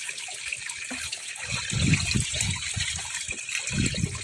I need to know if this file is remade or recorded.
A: recorded